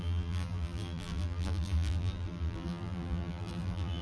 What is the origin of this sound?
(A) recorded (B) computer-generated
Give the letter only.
B